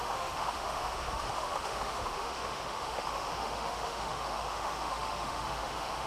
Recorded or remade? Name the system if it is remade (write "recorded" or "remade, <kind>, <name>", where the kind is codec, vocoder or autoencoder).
remade, autoencoder, DAC-VAE